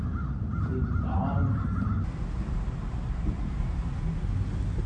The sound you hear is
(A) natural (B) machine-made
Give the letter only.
A